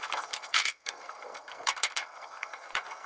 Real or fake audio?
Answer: fake